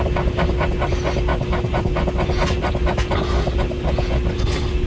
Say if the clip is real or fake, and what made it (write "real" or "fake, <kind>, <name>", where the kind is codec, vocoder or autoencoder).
real